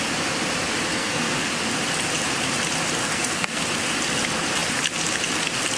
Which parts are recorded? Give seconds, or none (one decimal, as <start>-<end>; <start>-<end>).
0.0-0.9; 1.5-3.0; 3.6-5.8